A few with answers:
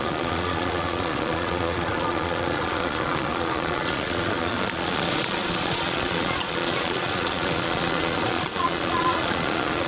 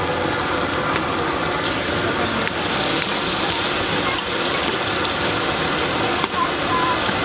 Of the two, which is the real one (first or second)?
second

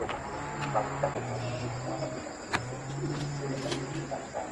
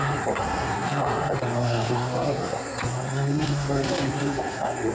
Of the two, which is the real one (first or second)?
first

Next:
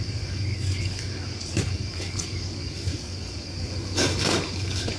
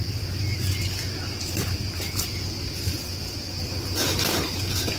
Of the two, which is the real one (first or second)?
second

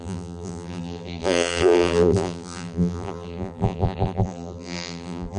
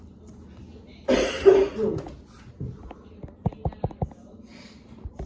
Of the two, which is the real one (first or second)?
second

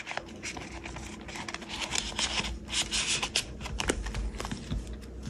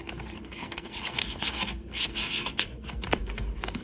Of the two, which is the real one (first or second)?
first